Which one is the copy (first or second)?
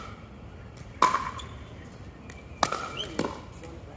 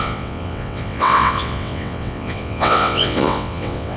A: second